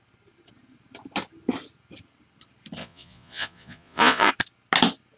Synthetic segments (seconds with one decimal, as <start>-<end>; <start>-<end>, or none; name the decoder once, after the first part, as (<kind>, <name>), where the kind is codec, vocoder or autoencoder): 2.8-4.3 (vocoder, Vocos)